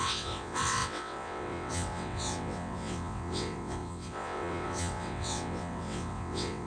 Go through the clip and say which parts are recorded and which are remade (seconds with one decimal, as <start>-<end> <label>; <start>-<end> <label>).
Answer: 0.0-6.7 remade